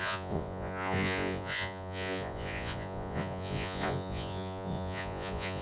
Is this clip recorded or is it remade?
remade